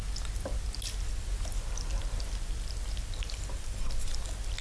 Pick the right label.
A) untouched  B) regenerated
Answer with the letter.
A